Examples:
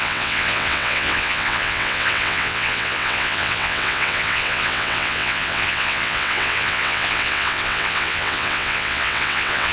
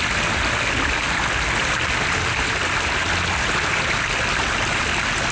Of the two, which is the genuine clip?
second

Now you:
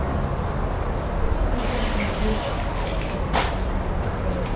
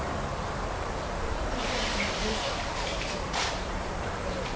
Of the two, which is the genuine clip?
first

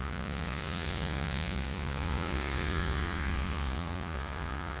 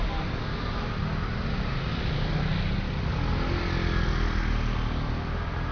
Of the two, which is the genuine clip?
second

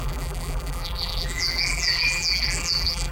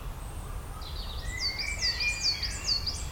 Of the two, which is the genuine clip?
second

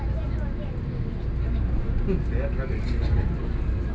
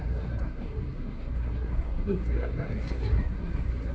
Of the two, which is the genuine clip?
first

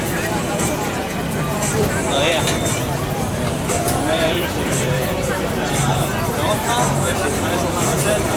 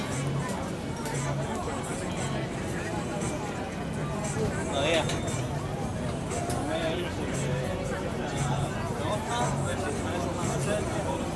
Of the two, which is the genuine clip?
second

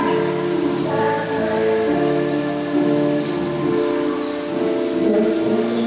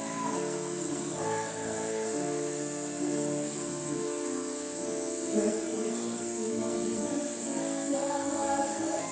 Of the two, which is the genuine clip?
first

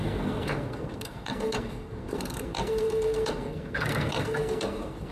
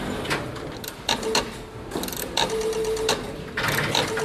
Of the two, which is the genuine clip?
second